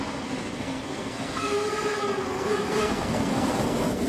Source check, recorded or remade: remade